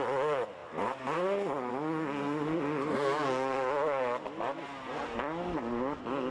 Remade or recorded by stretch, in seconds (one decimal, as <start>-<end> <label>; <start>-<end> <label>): 0.0-6.3 recorded